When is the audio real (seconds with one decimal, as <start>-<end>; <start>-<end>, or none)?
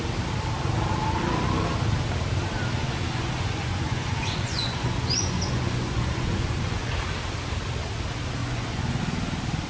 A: 0.0-2.8; 6.9-8.4; 9.0-9.7